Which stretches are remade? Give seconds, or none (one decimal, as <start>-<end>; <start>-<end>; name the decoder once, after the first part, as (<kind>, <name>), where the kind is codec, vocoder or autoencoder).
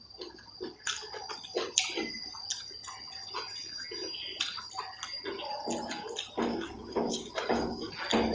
6.5-7.9 (codec, DAC)